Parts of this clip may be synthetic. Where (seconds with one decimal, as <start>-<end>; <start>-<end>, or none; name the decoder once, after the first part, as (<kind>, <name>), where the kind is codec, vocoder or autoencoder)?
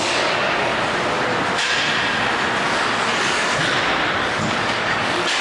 0.0-0.7 (codec, DAC); 3.2-3.6; 4.2-5.4